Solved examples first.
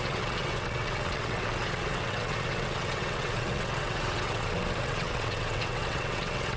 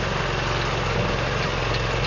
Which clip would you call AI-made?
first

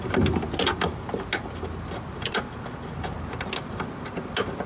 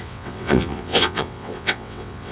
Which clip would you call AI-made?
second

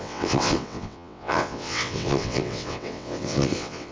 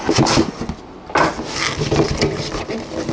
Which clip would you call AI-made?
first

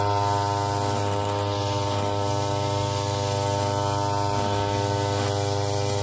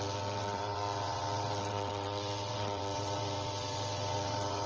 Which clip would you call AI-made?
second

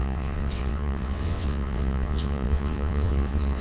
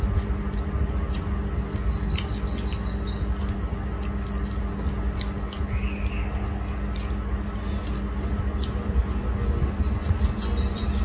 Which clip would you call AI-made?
first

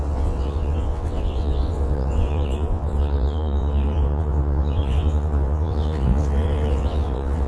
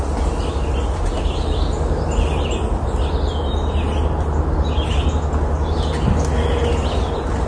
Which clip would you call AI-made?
first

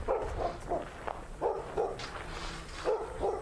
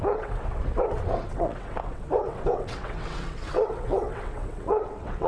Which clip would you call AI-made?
second